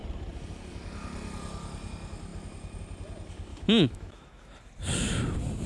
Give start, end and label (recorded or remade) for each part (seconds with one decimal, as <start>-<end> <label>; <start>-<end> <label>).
0.0-3.5 recorded; 3.5-4.5 remade; 4.5-5.7 recorded